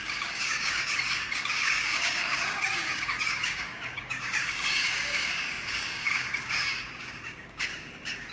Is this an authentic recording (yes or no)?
no